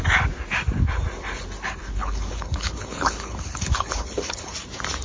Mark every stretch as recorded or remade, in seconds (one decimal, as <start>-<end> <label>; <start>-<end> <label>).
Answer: 0.0-1.8 recorded; 1.8-4.5 remade; 4.5-5.0 recorded